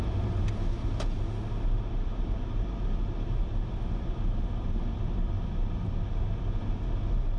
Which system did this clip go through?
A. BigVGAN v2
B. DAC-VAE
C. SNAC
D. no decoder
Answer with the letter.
D